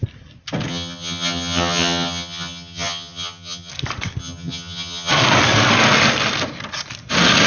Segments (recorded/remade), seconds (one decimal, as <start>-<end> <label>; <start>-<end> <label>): 0.0-0.7 recorded; 0.7-3.7 remade; 3.7-4.2 recorded; 4.2-5.1 remade; 5.1-7.5 recorded